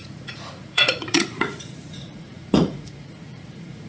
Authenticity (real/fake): fake